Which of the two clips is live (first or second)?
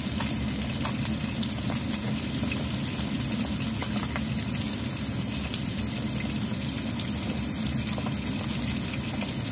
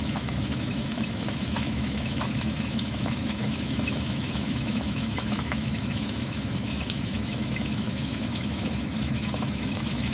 first